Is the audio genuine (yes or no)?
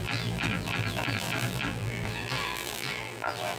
no